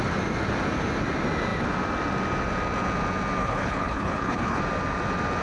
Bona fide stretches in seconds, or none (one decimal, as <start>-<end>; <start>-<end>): 0.0-3.4; 4.6-5.4